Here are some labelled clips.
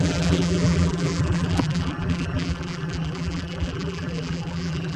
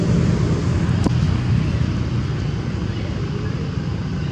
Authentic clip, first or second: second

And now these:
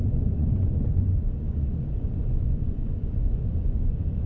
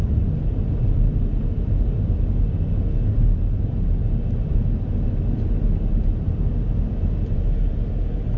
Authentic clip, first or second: second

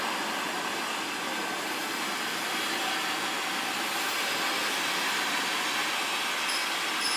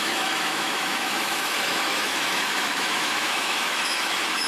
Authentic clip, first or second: first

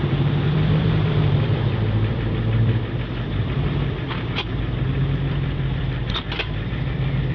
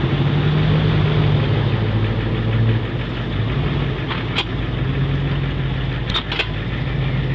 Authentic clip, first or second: second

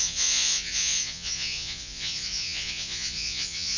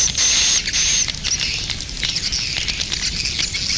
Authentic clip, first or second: second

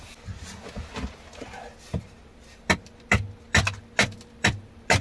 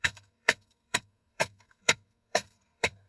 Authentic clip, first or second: first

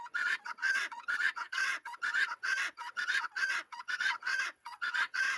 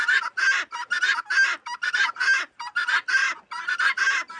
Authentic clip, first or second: second